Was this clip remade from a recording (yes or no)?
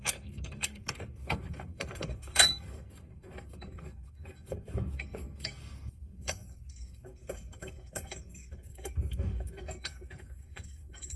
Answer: yes